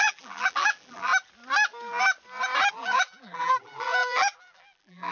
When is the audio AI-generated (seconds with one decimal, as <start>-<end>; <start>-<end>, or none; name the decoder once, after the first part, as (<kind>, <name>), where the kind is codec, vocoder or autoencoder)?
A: 0.0-1.1 (vocoder, BigVGAN v2); 2.7-5.1